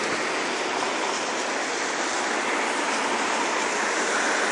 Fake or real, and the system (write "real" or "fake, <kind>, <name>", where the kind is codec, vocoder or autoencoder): real